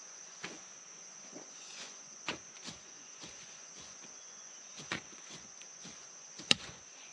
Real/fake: fake